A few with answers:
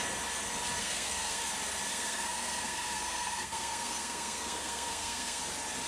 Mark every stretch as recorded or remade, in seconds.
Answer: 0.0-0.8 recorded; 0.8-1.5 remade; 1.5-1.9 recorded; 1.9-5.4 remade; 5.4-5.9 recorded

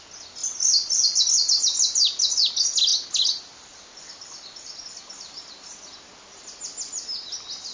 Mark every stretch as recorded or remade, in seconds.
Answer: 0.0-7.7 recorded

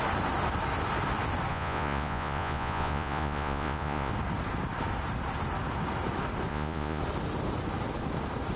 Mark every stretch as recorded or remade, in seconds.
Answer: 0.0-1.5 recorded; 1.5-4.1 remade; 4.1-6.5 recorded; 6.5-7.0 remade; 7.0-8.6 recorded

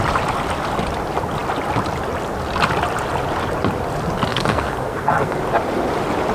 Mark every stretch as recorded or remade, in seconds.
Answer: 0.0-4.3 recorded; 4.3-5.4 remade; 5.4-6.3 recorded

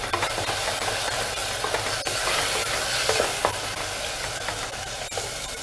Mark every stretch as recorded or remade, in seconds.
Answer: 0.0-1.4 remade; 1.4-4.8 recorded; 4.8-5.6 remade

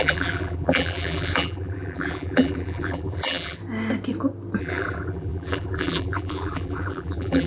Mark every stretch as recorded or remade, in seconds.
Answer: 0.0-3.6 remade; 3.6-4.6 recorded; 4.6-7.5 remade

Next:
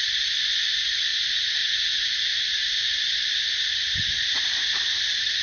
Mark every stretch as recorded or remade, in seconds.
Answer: 0.0-5.4 remade

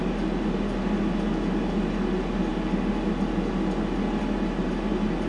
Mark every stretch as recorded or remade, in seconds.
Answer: 0.0-5.3 recorded